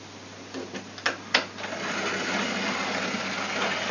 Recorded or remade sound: recorded